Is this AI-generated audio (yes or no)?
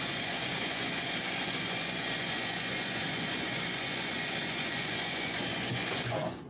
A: yes